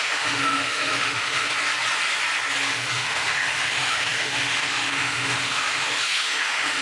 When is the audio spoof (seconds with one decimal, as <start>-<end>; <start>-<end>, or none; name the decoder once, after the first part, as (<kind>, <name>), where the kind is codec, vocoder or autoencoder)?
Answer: 0.0-1.5 (autoencoder, DAC-VAE); 2.7-6.8